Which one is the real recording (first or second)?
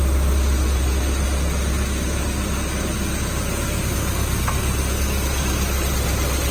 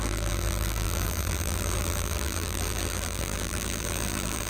first